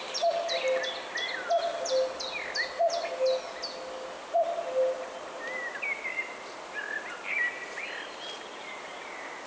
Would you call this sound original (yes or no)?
yes